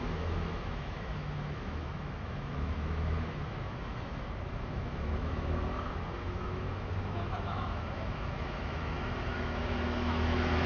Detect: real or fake fake